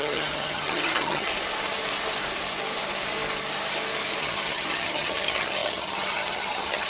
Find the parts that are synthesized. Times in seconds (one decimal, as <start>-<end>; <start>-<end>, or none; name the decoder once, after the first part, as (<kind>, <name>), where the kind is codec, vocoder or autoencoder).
0.0-1.3 (vocoder, HiFi-GAN); 4.2-6.9